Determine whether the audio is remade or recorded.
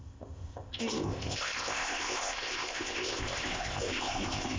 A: remade